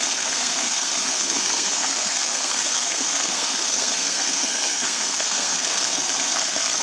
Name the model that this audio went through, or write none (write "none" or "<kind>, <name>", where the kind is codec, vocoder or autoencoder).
codec, SNAC